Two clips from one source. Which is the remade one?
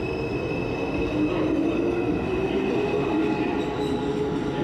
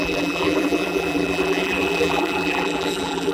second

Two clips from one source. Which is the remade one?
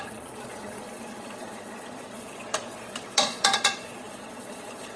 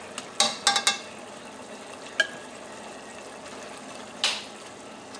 first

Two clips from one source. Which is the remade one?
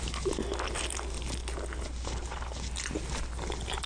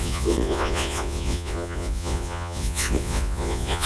second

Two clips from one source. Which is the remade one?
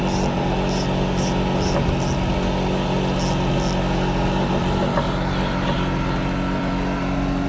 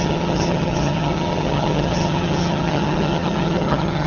second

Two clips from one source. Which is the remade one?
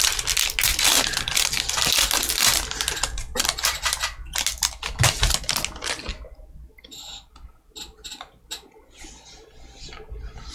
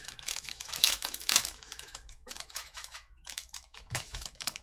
second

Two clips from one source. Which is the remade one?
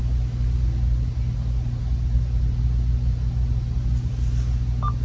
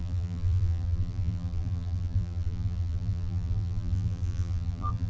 second